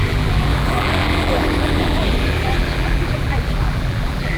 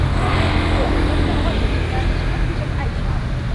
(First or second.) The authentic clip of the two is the second